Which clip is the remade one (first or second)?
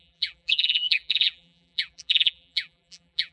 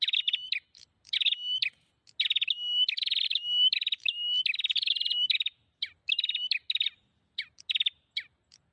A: first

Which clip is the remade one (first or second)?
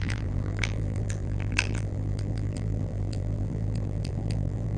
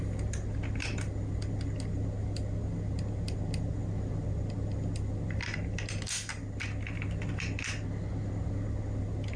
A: first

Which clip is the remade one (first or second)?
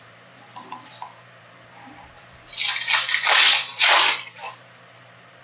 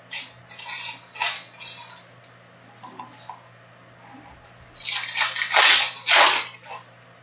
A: first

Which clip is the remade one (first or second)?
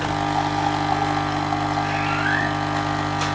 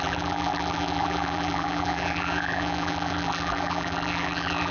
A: second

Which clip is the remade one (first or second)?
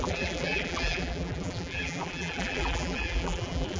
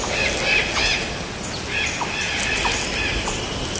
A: first